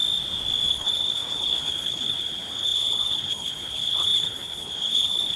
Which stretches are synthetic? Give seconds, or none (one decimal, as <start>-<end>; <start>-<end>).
0.7-5.4